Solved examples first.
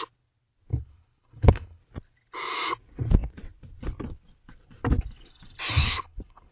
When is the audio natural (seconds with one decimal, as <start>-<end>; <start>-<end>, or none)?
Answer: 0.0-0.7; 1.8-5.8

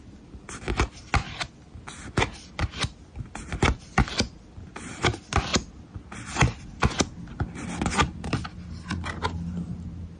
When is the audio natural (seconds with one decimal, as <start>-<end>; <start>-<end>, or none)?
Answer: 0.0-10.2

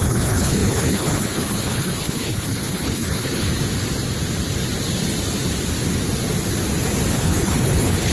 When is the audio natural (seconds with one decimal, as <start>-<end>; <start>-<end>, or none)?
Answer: 3.5-7.1

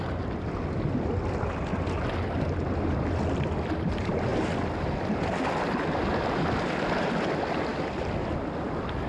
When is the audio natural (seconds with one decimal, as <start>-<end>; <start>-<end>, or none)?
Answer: 0.0-9.1

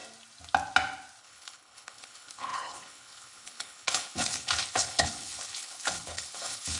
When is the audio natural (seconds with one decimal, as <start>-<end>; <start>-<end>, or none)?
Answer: 0.0-1.2

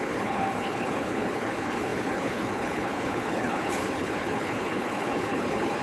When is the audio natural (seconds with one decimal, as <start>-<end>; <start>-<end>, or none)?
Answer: none